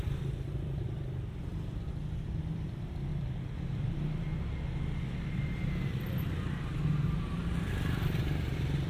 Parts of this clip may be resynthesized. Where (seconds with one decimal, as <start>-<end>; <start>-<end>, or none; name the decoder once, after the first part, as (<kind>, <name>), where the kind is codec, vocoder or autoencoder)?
0.0-4.3 (vocoder, BigVGAN v2); 7.7-8.9